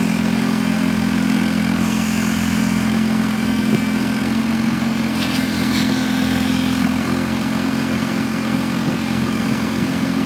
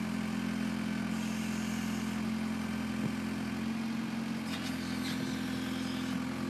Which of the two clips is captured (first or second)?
second